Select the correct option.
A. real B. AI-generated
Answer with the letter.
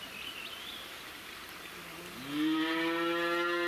A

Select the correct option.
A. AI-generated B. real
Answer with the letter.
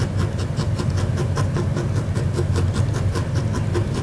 B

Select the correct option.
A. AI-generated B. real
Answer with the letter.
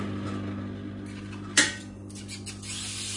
B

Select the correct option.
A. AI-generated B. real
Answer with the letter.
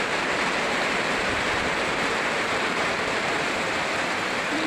A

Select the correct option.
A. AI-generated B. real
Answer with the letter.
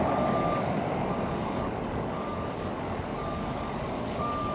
A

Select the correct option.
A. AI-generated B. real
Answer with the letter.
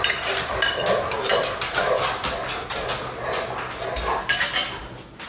B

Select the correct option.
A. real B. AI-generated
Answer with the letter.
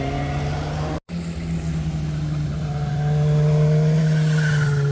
A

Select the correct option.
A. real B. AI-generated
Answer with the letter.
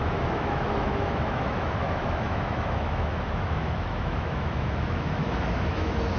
B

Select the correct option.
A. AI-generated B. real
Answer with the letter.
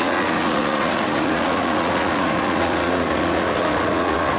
A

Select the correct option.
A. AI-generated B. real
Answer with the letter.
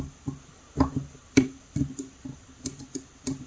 A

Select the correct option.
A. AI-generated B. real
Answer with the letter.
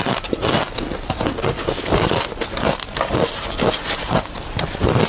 B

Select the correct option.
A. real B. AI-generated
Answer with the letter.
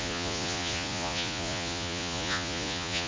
B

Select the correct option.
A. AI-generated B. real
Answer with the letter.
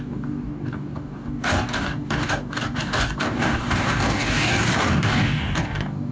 A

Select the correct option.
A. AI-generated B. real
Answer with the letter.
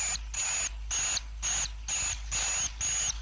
B